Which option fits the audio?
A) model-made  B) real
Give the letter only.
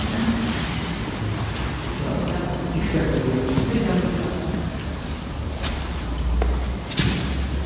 B